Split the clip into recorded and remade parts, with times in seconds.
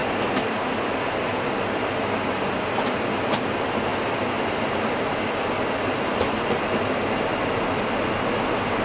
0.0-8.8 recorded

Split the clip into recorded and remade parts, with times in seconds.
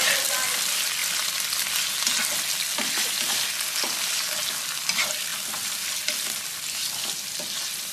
0.0-5.3 recorded; 5.3-5.8 remade; 5.8-7.9 recorded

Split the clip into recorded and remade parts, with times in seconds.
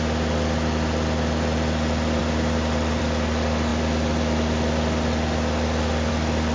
0.0-6.5 recorded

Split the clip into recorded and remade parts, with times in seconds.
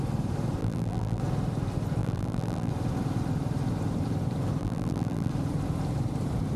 0.0-0.6 recorded; 0.6-1.2 remade; 1.2-2.0 recorded; 2.0-2.7 remade; 2.7-4.6 recorded; 4.6-5.3 remade; 5.3-6.6 recorded